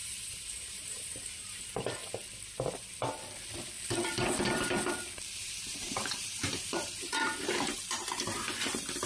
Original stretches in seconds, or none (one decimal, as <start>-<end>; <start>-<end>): 1.6-5.4; 7.7-9.1